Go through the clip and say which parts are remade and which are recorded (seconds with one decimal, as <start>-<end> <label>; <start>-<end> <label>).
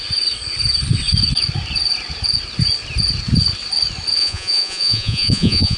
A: 0.0-4.2 recorded; 4.2-5.8 remade